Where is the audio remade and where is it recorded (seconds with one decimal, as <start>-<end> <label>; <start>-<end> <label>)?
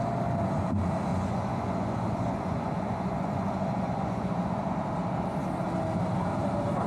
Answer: 0.0-1.1 recorded; 1.1-4.7 remade; 4.7-6.9 recorded